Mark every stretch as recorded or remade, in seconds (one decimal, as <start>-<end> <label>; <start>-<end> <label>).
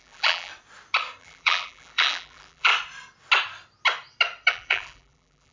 0.0-0.5 remade; 0.5-1.2 recorded; 1.2-2.7 remade; 2.7-4.5 recorded; 4.5-5.5 remade